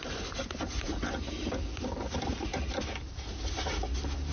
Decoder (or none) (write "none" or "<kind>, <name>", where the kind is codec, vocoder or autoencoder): none